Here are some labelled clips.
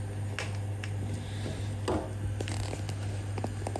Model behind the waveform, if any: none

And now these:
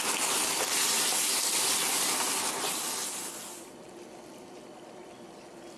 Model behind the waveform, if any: none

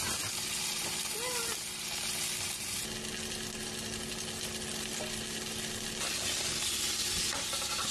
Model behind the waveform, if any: none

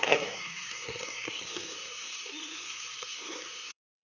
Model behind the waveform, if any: codec, SNAC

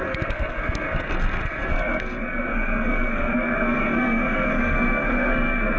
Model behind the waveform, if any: codec, SNAC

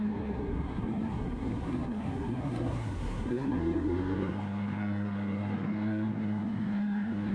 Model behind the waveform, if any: codec, SNAC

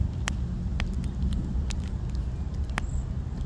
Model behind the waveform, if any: none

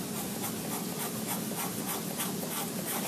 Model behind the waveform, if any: none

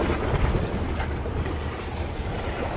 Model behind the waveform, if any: none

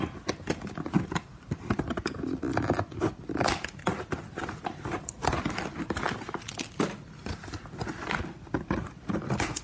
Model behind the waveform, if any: none